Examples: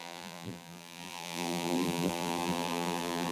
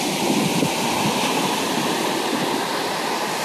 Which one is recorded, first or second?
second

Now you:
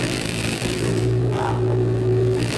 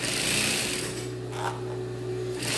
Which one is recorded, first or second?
second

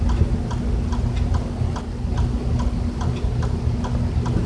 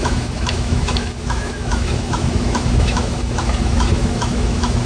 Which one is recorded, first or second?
first